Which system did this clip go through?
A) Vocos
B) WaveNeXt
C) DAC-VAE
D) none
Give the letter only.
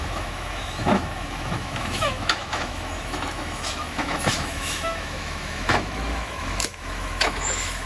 C